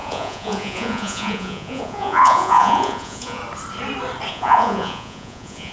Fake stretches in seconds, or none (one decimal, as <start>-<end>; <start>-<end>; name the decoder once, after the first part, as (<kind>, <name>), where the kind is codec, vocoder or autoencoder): 0.0-3.4 (vocoder, Vocos); 4.3-5.7